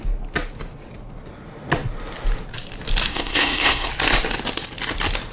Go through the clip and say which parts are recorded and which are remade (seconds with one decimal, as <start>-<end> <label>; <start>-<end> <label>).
0.0-3.1 recorded; 3.1-3.9 remade; 3.9-5.3 recorded